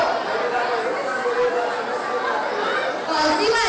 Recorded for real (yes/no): yes